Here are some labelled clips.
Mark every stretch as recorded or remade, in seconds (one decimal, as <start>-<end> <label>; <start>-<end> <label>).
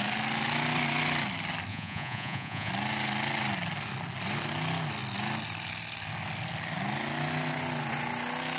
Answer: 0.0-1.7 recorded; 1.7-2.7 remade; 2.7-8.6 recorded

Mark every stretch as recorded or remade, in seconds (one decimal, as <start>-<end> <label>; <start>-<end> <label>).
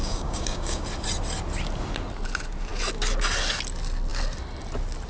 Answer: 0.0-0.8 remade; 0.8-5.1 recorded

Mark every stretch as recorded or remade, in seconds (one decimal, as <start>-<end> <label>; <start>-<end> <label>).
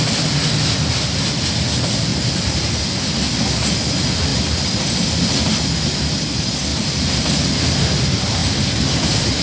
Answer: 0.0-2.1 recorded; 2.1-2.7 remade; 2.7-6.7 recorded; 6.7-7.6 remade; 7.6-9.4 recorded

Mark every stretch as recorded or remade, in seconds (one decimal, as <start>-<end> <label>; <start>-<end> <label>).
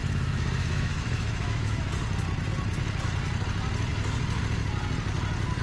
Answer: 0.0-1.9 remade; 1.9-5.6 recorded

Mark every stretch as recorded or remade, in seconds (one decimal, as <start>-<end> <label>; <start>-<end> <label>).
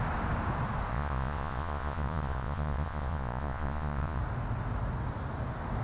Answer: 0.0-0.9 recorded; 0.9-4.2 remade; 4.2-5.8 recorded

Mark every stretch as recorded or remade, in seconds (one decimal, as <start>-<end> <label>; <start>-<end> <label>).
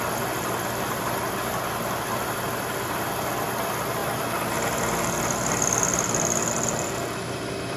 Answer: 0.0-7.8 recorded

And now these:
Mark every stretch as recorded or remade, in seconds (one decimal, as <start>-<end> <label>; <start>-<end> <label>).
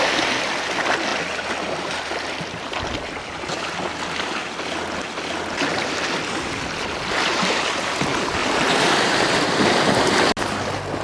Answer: 0.0-8.4 recorded; 8.4-10.2 remade; 10.2-11.0 recorded